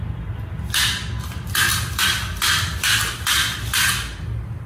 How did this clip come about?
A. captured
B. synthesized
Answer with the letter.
A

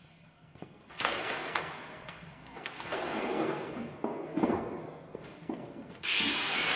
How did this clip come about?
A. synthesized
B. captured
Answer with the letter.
A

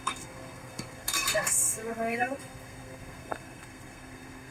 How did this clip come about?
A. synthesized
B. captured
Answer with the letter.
A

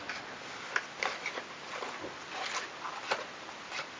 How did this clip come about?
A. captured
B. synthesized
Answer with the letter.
A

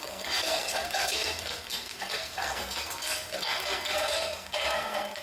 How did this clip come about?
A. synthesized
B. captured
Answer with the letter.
A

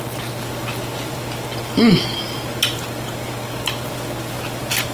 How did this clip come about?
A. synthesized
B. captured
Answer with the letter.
B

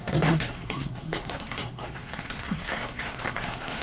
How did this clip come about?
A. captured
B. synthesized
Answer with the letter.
B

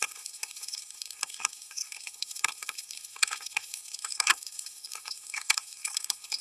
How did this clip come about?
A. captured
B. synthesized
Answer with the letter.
B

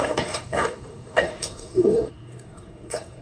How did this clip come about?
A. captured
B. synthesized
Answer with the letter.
B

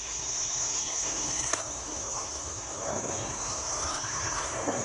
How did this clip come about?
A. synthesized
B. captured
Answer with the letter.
A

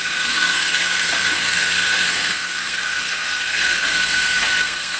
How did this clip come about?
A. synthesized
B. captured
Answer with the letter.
A